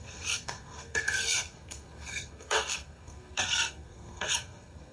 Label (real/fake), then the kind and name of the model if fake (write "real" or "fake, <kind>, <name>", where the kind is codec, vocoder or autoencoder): fake, codec, SNAC